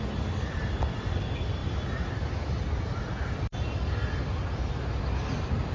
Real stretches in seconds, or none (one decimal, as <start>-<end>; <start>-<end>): 0.0-5.7